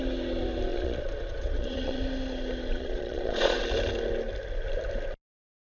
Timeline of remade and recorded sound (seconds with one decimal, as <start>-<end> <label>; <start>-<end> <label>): 0.0-0.7 recorded; 0.7-2.0 remade; 2.0-2.7 recorded; 2.7-3.6 remade; 3.6-5.7 recorded